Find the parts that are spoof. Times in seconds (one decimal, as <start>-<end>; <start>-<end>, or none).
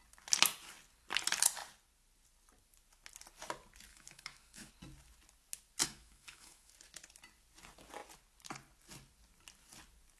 3.9-4.7; 5.8-6.7